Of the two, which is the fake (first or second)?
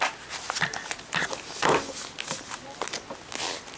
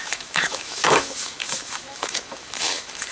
second